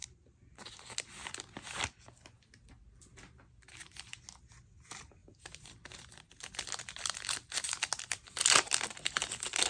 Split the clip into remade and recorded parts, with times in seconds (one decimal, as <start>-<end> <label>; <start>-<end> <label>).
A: 0.0-0.7 remade; 0.7-9.7 recorded